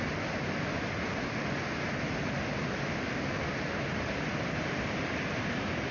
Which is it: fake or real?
real